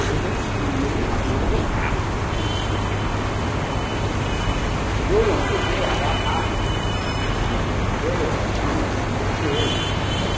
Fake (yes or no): no